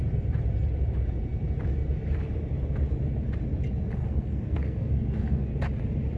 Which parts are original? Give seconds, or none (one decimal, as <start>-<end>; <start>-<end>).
0.0-4.0; 5.5-6.2